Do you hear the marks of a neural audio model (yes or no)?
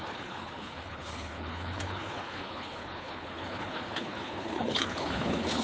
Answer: yes